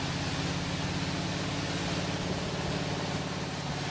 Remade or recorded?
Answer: recorded